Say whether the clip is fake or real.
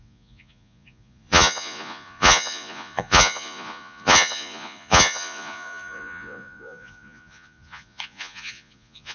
fake